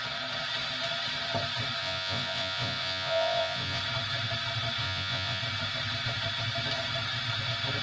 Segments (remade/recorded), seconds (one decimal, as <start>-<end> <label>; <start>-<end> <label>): 0.0-1.8 recorded; 1.8-3.8 remade; 3.8-4.8 recorded; 4.8-5.4 remade; 5.4-7.8 recorded